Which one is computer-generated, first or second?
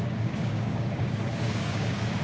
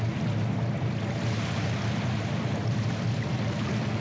first